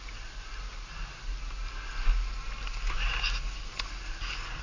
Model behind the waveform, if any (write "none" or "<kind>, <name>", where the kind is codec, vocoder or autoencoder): none